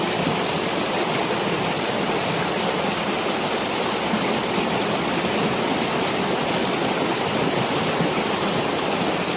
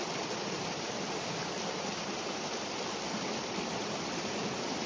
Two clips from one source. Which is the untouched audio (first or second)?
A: first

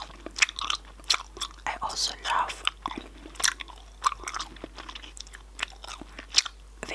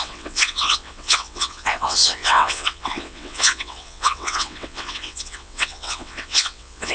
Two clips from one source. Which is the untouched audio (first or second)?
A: first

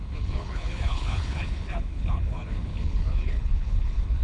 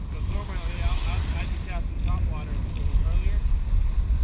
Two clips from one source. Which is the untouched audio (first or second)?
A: second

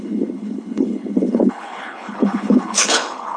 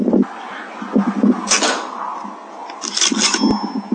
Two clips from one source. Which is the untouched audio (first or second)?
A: second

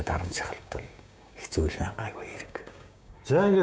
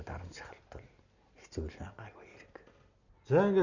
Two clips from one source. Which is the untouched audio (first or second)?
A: second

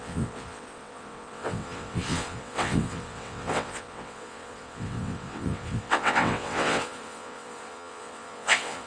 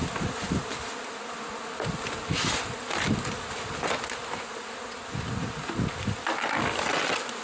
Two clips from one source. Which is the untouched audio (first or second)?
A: second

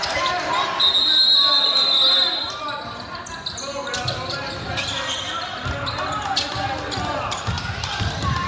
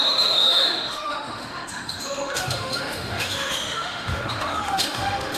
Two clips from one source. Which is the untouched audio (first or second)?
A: first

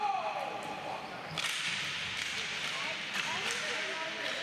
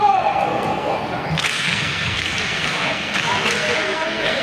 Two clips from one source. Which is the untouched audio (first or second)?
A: first